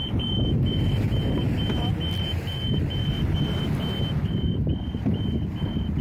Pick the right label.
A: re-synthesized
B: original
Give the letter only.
B